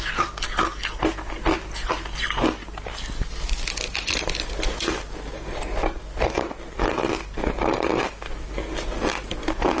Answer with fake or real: real